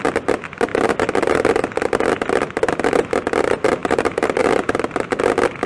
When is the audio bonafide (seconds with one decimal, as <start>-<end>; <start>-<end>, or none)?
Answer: 0.0-3.8; 4.4-5.7